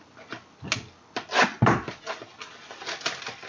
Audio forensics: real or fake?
real